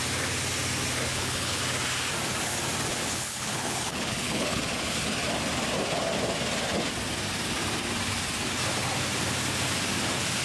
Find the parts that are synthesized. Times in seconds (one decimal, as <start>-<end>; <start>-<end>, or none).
1.1-1.6; 2.9-4.6